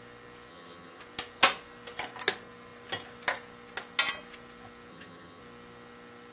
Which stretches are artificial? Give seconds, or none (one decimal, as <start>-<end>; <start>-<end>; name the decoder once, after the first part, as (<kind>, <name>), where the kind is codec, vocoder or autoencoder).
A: 0.5-1.0 (vocoder, HiFi-GAN); 4.9-5.4